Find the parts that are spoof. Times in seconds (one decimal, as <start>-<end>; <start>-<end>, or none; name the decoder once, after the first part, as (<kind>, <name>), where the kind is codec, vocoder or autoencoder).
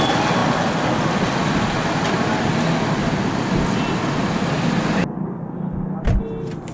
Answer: none